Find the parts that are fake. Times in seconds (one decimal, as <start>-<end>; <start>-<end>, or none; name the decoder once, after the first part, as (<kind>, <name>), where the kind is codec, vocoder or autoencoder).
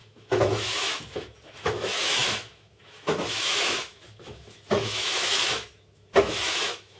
0.0-7.0 (autoencoder, DAC-VAE)